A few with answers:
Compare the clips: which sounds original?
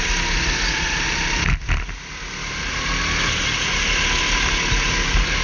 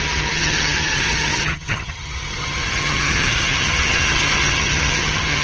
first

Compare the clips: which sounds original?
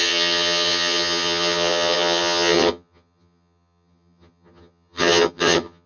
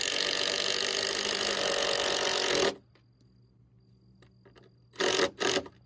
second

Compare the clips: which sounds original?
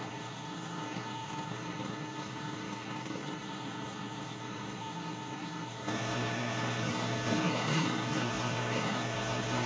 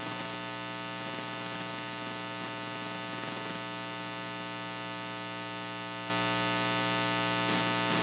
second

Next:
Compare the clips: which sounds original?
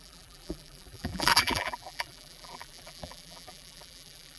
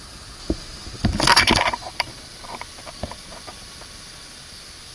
second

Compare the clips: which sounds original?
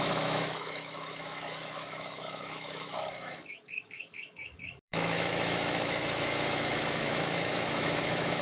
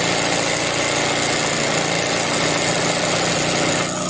second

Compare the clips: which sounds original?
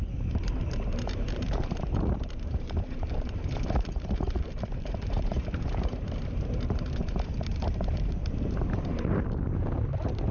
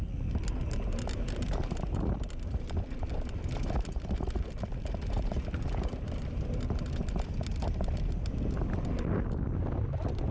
second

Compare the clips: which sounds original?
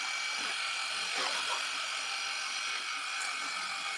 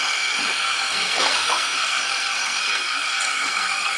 first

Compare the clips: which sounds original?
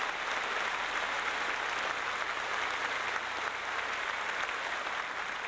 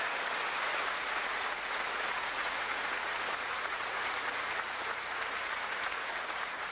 first